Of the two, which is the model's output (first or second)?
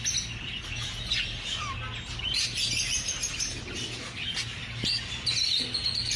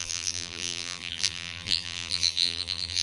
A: second